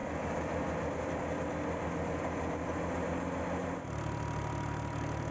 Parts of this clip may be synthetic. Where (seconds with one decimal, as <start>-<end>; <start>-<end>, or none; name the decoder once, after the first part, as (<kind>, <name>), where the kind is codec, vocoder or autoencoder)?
none